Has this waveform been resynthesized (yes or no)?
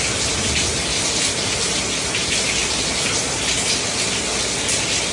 no